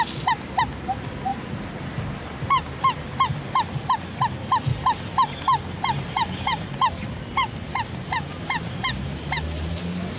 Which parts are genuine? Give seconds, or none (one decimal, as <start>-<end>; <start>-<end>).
0.0-1.3; 2.6-4.7; 9.7-10.2